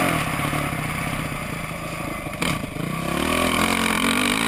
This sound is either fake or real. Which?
real